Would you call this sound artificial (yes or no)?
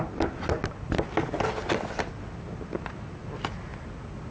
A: no